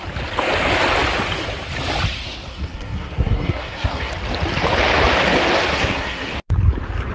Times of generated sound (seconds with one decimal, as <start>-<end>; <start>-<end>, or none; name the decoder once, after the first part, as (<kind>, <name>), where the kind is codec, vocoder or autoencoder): 2.5-4.1 (codec, SNAC); 5.7-6.3